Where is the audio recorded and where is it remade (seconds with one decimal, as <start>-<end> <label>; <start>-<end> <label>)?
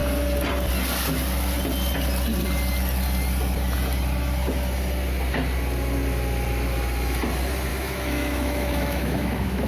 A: 0.0-7.7 recorded; 7.7-9.7 remade